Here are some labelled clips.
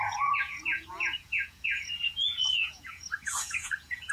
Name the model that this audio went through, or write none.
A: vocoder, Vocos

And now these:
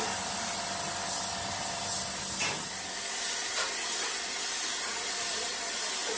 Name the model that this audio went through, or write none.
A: none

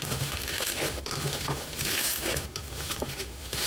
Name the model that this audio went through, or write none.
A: autoencoder, DAC-VAE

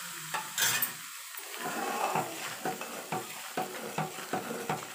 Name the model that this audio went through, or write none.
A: none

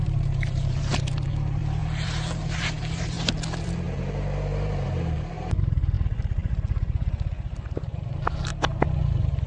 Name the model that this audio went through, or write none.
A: vocoder, BigVGAN v2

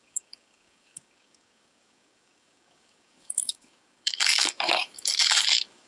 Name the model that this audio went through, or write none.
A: codec, DAC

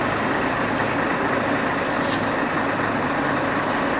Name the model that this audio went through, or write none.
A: none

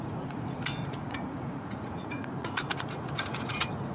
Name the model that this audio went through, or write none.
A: vocoder, Vocos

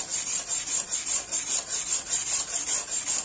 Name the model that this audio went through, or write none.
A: vocoder, BigVGAN v2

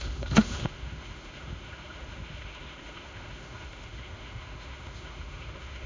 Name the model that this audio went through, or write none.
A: autoencoder, DAC-VAE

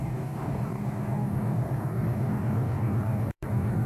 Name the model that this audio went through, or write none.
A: codec, DAC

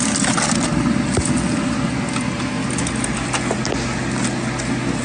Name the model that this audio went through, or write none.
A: none